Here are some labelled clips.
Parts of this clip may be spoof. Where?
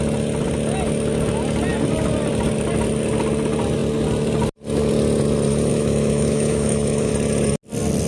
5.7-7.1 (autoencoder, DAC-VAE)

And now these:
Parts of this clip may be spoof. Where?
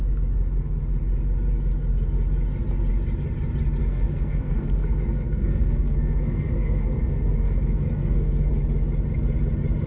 3.8-8.5 (codec, SNAC)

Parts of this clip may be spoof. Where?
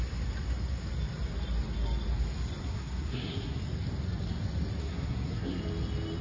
2.6-3.6 (codec, SNAC); 4.8-5.6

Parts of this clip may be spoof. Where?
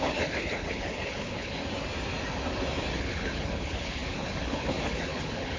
0.0-1.6 (codec, HILCodec); 3.0-5.6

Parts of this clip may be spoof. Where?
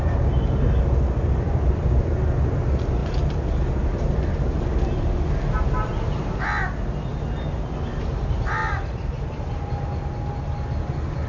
none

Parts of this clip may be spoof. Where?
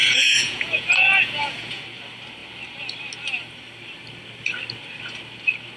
0.0-1.8 (vocoder, Vocos)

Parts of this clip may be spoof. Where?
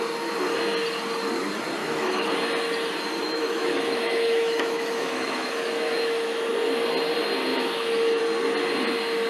1.8-2.3 (autoencoder, DAC-VAE); 3.2-6.5; 7.5-8.2